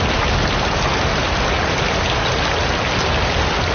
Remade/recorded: recorded